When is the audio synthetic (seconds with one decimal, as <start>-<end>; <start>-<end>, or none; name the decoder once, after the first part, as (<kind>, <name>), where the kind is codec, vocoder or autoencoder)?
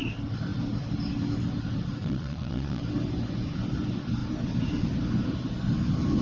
2.0-2.8 (vocoder, Vocos)